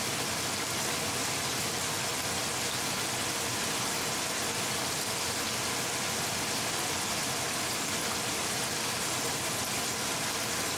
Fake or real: real